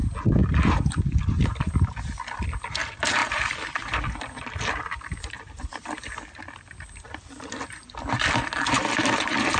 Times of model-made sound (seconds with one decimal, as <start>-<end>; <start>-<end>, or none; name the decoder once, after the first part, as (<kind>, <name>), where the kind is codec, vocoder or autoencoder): none